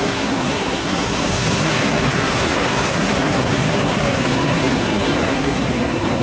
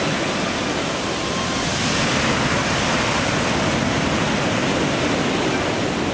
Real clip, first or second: second